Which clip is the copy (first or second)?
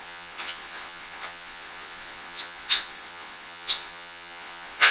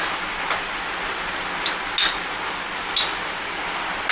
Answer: first